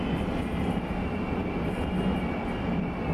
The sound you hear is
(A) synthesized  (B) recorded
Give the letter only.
B